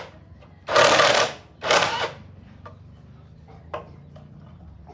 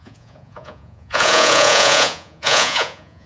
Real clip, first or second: first